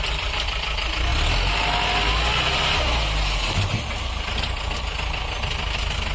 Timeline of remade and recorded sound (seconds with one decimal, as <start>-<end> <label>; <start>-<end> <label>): 0.0-6.1 recorded